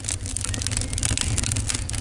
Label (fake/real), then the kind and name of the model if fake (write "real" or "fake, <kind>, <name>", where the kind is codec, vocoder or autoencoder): real